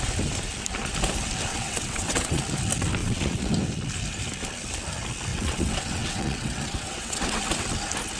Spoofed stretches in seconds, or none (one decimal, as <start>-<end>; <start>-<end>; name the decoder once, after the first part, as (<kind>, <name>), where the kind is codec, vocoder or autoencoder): 1.5-2.4 (vocoder, WaveNeXt); 3.0-3.5; 5.3-7.4